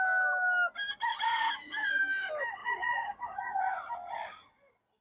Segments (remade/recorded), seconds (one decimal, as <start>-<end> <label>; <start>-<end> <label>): 0.0-1.1 recorded; 1.1-2.0 remade; 2.0-2.6 recorded; 2.6-3.6 remade; 3.6-5.0 recorded